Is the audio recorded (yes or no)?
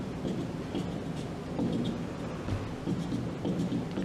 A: yes